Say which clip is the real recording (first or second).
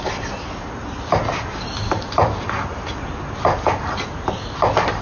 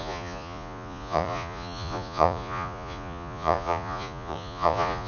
first